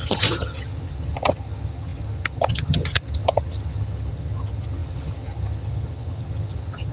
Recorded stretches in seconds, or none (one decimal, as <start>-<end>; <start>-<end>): none